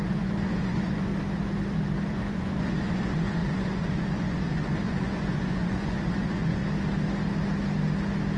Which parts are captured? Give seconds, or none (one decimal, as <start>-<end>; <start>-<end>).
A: 1.1-2.1; 6.6-8.4